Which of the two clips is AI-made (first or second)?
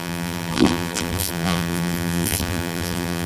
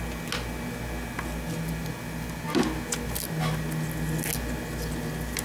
first